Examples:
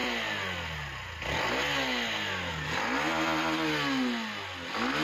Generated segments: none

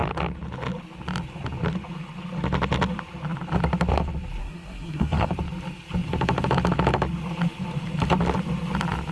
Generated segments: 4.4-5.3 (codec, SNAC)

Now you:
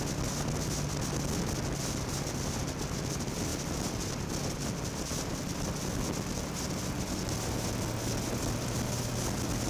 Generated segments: none

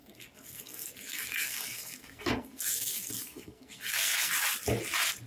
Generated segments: 0.0-4.3 (codec, SNAC)

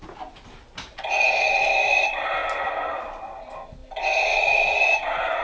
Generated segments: none

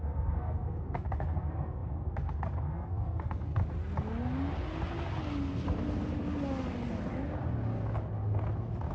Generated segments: 0.0-3.6 (codec, SNAC)

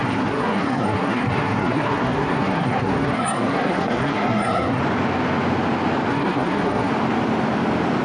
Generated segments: 0.0-4.8 (codec, SNAC); 6.1-6.9

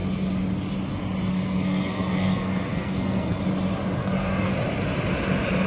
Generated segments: 1.3-3.4 (codec, SNAC); 4.0-4.5